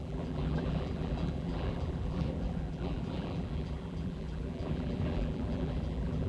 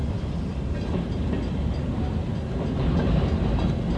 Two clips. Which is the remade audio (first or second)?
first